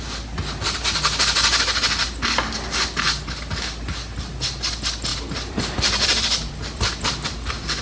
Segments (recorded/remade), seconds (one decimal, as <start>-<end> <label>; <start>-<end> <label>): 0.0-5.1 recorded; 5.1-7.8 remade